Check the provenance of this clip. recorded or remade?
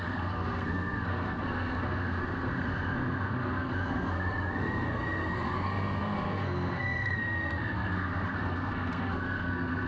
remade